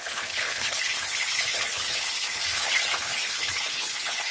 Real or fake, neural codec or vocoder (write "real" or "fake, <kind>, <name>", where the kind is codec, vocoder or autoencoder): fake, codec, HILCodec